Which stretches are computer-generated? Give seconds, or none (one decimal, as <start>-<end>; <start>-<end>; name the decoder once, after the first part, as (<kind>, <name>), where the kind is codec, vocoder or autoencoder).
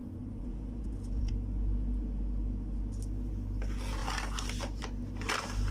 0.0-1.3 (vocoder, Vocos)